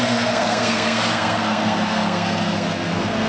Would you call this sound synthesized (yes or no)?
yes